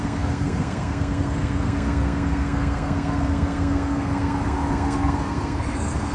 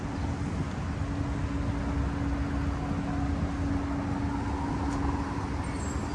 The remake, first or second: first